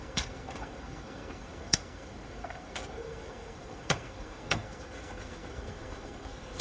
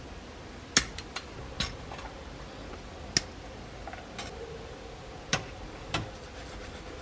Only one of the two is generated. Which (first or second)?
first